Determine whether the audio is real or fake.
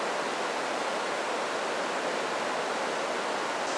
real